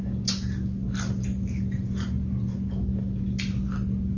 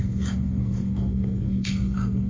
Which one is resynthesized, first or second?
second